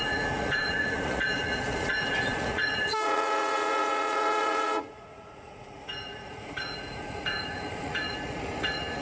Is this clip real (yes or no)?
no